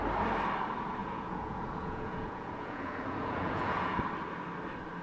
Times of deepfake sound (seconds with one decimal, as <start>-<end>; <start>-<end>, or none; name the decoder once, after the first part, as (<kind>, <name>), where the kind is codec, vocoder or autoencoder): 1.0-4.0 (vocoder, Vocos)